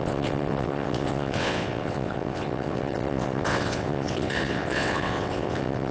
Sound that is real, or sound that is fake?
fake